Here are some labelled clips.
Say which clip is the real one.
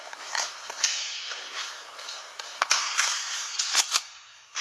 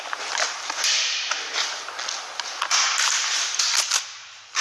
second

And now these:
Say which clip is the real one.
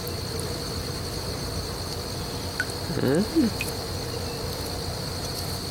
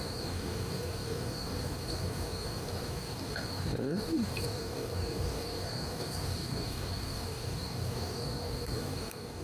first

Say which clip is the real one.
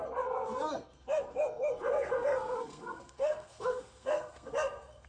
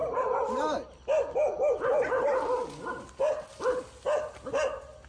second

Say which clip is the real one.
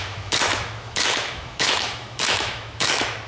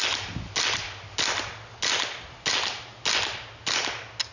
second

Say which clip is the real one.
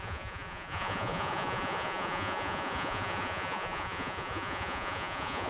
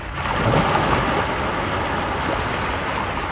second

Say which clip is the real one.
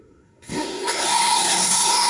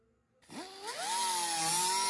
second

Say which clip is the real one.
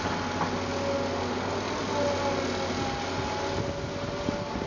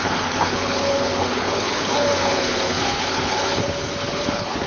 first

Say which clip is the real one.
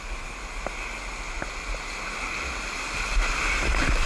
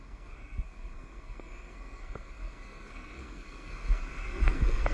first